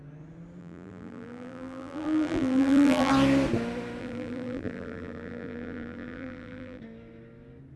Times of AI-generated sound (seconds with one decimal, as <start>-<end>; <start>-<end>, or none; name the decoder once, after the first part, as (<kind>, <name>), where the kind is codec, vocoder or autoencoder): 0.6-3.1 (vocoder, BigVGAN v2); 4.0-6.8